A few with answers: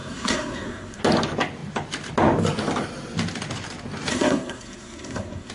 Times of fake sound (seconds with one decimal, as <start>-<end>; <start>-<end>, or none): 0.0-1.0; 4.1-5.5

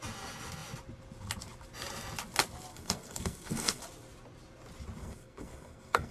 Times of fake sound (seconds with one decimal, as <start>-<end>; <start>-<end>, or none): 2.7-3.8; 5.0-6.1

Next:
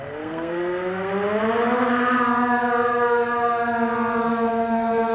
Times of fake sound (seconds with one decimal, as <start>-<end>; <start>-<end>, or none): 0.0-1.1; 4.2-5.1

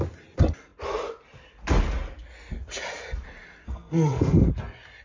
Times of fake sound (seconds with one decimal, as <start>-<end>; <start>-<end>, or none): 3.6-4.5